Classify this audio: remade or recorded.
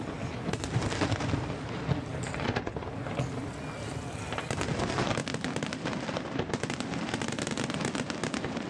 recorded